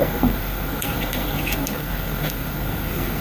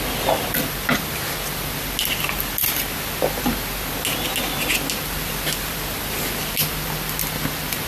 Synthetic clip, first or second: first